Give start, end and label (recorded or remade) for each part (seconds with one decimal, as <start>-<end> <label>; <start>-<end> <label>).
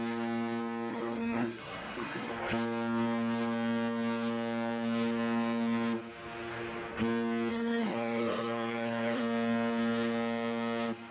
0.0-0.9 recorded; 0.9-2.3 remade; 2.3-7.5 recorded; 7.5-9.2 remade; 9.2-11.1 recorded